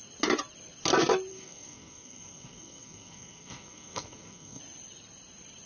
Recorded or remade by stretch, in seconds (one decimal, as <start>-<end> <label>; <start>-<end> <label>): 0.0-1.3 recorded; 1.3-4.6 remade; 4.6-5.7 recorded